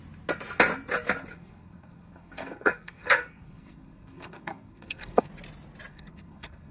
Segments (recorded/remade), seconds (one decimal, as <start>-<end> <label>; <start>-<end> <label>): 0.0-1.3 recorded; 1.3-5.3 remade; 5.3-5.9 recorded; 5.9-6.7 remade